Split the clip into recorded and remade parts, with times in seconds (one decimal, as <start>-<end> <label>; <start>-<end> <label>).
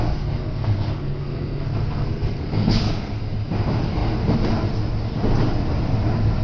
0.0-0.4 recorded; 0.4-3.2 remade; 3.2-6.4 recorded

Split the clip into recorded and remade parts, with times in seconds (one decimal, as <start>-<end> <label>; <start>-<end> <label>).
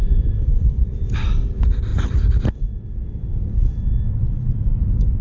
0.0-1.2 remade; 1.2-5.2 recorded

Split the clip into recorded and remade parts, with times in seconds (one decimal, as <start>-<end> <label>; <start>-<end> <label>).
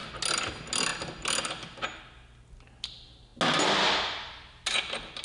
0.0-5.2 recorded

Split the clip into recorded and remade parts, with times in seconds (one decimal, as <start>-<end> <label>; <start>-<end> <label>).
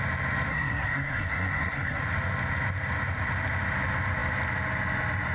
0.0-0.5 recorded; 0.5-2.0 remade; 2.0-5.3 recorded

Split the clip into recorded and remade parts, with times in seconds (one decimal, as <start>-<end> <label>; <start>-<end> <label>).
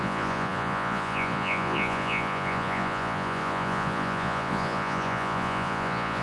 0.0-6.2 remade